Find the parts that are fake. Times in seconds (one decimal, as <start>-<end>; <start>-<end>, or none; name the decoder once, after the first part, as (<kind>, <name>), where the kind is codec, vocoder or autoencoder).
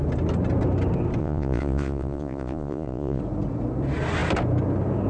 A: 1.2-3.2 (vocoder, Vocos)